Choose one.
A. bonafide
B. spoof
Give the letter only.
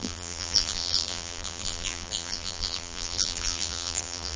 B